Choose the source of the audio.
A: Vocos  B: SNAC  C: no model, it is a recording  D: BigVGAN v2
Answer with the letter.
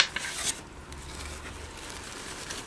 C